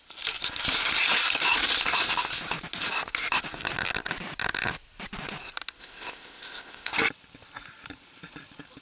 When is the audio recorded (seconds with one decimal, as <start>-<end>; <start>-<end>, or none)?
0.0-5.8; 6.9-8.8

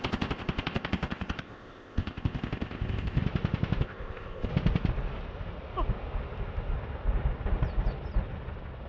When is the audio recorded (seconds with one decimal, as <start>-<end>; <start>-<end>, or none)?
3.2-3.8; 4.5-8.9

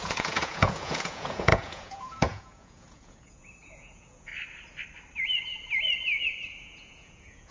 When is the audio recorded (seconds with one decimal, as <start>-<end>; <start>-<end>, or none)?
4.3-6.6